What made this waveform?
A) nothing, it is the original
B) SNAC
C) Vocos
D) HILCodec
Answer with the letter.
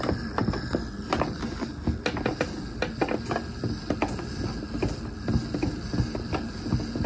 A